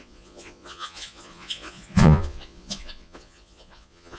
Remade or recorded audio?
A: remade